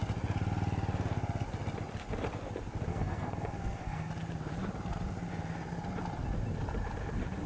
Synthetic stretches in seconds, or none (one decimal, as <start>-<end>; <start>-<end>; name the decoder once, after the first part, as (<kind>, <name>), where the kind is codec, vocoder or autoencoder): 2.9-4.1 (codec, SNAC)